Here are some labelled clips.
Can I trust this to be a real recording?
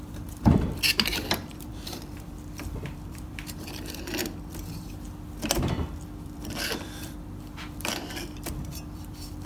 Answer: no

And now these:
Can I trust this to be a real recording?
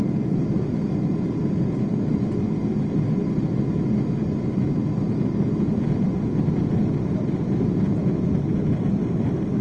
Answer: yes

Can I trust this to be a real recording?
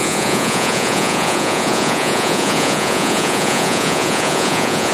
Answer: no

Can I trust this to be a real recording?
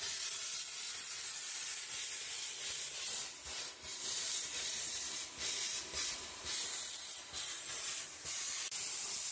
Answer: no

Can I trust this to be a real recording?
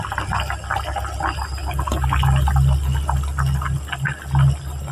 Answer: yes